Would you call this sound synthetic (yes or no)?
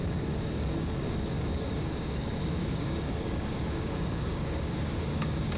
yes